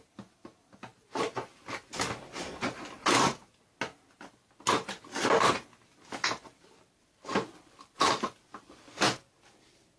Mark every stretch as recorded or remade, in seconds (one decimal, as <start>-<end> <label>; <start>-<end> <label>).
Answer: 0.0-6.4 recorded; 6.4-8.2 remade; 8.2-10.0 recorded